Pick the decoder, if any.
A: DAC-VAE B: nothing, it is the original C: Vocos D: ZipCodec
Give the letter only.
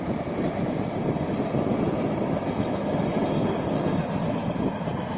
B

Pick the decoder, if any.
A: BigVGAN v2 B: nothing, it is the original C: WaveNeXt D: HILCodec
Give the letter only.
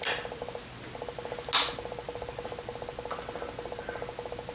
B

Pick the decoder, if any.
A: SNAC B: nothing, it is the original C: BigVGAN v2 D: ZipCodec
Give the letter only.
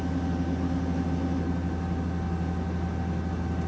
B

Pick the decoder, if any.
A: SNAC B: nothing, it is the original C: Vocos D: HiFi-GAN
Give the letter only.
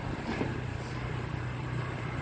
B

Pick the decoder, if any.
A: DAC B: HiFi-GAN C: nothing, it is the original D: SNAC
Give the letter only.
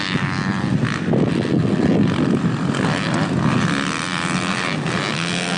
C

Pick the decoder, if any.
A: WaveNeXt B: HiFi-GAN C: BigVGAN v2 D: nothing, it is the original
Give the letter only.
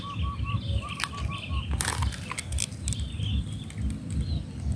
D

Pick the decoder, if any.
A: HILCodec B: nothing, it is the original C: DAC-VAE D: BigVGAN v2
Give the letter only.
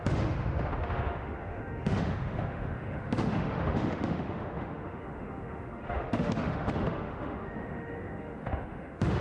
C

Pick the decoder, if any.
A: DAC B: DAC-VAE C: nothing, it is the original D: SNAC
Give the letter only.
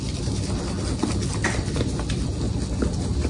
C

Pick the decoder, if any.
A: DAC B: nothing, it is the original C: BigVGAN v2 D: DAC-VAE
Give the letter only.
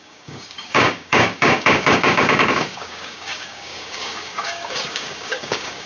A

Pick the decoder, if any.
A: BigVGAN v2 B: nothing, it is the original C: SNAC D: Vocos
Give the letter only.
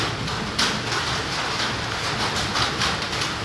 B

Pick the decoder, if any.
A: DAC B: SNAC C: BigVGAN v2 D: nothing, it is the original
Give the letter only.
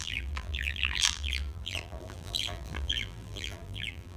C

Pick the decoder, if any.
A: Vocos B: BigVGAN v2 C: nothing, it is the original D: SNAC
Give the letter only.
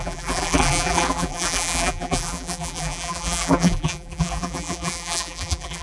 B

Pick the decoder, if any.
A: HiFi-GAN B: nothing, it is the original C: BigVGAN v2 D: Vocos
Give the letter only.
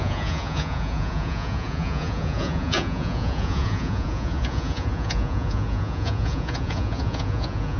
D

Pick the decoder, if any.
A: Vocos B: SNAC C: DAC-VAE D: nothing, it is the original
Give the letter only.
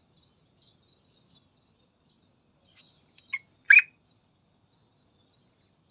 D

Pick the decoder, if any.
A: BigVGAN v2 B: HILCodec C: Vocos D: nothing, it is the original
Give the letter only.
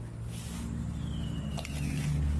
D